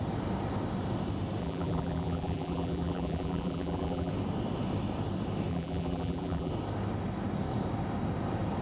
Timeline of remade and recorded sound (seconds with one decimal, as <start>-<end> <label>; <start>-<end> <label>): 0.0-1.4 recorded; 1.4-4.1 remade; 4.1-5.5 recorded; 5.5-6.5 remade; 6.5-8.6 recorded